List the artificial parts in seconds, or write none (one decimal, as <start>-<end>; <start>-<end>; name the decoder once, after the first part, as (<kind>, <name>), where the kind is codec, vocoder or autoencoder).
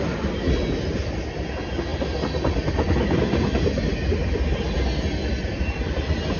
none